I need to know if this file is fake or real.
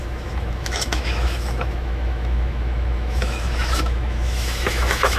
fake